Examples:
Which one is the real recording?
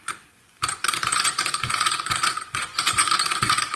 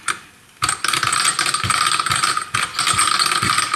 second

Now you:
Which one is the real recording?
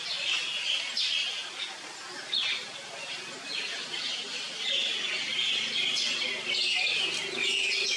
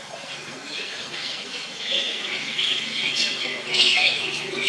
first